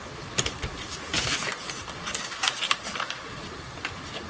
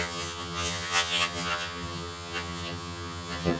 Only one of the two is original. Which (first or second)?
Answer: first